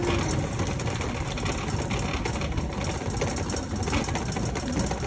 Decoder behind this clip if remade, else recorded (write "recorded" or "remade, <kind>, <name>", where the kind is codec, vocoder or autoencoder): recorded